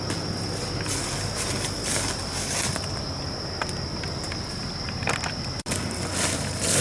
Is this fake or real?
real